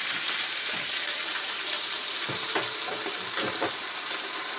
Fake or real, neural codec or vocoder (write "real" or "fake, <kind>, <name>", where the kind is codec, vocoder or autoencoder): fake, vocoder, BigVGAN v2